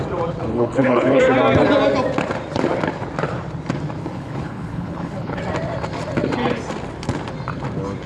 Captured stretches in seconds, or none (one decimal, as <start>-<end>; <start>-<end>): 0.0-0.5; 1.2-4.0; 5.4-8.1